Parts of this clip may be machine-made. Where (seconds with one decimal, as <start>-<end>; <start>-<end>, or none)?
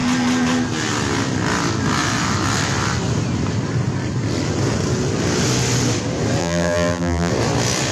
6.4-7.3